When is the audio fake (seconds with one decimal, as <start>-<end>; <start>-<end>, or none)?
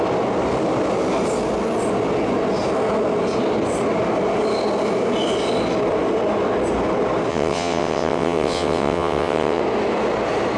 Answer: 7.3-9.6